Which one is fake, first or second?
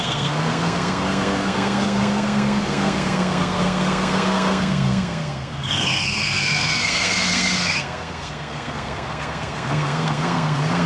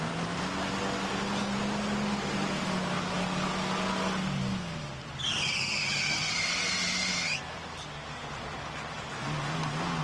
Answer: first